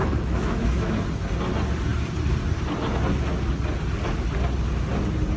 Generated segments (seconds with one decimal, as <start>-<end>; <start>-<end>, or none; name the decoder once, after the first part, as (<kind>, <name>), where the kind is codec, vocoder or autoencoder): 0.0-1.0 (autoencoder, DAC-VAE)

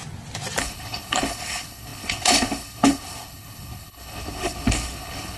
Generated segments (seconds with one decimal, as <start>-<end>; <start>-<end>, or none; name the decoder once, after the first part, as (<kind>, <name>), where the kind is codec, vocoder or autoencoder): 0.6-5.4 (codec, HILCodec)

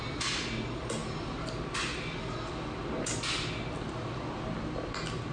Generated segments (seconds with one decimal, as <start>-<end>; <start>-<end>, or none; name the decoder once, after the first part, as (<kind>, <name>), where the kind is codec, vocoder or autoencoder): none

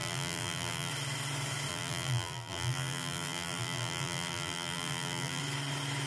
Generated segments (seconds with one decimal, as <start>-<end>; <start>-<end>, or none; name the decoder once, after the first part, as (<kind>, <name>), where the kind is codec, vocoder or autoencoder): 0.0-0.9 (vocoder, BigVGAN v2); 1.7-5.4

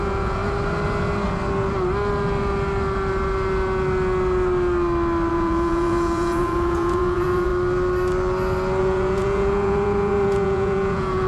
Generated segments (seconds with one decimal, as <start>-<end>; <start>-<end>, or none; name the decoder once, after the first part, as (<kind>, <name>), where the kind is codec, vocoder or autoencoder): 0.0-0.4 (vocoder, Vocos); 5.3-7.5; 8.8-11.3

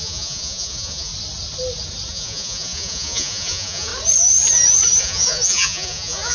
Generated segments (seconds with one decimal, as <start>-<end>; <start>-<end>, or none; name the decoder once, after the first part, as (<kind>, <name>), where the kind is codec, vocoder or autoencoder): 0.0-1.1 (vocoder, Vocos); 2.1-3.9; 5.0-6.3

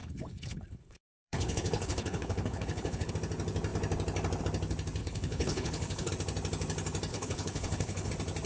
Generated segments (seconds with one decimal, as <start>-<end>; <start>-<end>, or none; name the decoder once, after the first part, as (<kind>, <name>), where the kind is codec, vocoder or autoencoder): 0.0-3.1 (codec, HILCodec); 5.0-6.1; 7.1-8.1